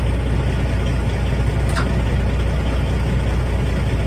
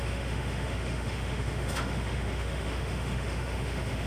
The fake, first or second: second